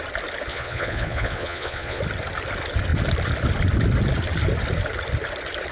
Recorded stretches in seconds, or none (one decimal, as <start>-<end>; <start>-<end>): 0.0-0.5; 2.0-5.7